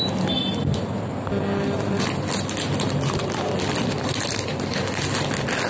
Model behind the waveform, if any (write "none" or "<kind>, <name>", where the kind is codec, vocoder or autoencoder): none